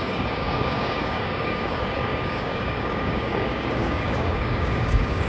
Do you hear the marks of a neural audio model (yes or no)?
yes